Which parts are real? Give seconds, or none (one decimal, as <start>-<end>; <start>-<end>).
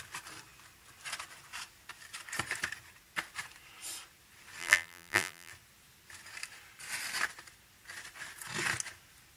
0.0-4.6; 5.5-9.4